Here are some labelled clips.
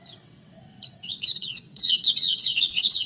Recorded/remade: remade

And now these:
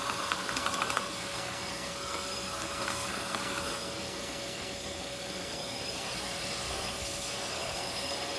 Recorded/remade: remade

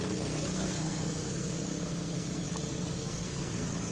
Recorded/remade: remade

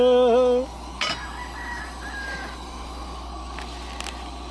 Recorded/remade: recorded